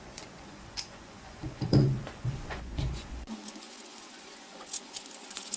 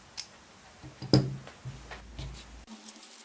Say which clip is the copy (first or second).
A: first